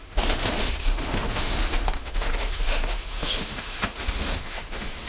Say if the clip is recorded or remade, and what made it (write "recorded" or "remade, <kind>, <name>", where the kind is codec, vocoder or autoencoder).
remade, autoencoder, DAC-VAE